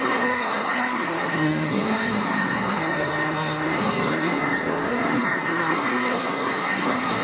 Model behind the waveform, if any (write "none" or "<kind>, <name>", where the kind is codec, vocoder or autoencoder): codec, SNAC